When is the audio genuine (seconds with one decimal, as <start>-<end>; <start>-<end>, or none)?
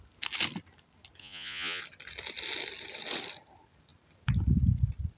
0.0-1.2; 1.8-5.2